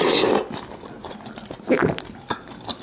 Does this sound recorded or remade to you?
recorded